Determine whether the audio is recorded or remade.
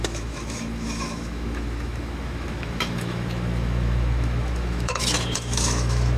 remade